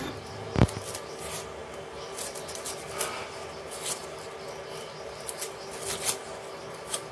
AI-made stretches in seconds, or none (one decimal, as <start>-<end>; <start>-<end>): none